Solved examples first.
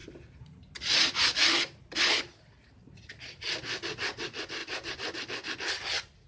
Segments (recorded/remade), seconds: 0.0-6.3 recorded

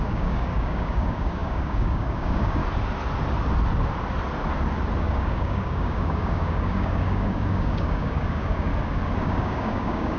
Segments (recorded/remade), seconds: 0.0-2.6 remade; 2.6-5.0 recorded; 5.0-8.7 remade; 8.7-9.2 recorded; 9.2-10.2 remade

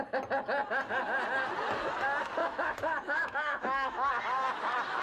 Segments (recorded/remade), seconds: 0.0-2.4 recorded; 2.4-4.1 remade; 4.1-5.0 recorded